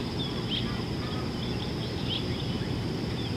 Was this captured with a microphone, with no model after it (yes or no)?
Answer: yes